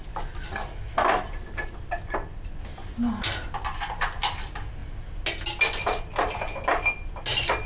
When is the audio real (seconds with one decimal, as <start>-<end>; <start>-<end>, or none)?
0.0-7.7